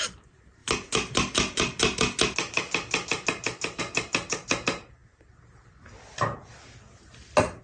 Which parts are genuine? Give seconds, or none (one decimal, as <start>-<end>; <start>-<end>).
0.0-7.6